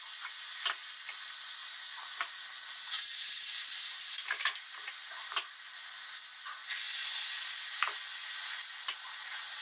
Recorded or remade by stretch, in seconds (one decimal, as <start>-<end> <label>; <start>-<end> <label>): 0.0-1.6 recorded; 1.6-5.6 remade; 5.6-9.6 recorded